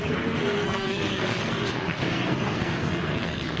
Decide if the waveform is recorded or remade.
remade